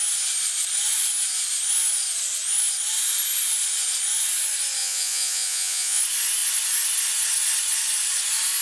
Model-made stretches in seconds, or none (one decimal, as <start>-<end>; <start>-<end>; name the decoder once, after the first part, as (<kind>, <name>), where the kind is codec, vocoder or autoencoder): 4.8-6.0 (vocoder, Vocos)